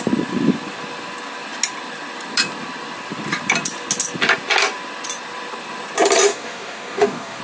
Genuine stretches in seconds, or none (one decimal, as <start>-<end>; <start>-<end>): 0.0-6.3